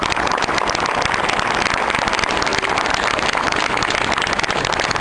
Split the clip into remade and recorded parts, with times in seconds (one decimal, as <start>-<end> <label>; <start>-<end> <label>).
0.0-5.0 recorded